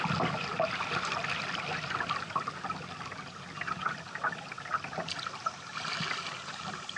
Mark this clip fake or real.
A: real